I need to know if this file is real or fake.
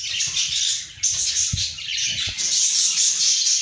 real